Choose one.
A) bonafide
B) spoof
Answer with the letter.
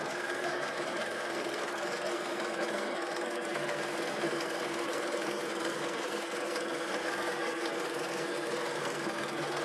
B